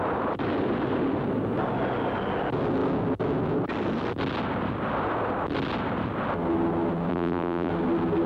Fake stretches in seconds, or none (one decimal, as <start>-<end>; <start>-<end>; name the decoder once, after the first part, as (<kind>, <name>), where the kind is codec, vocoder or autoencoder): 7.1-7.7 (vocoder, BigVGAN v2)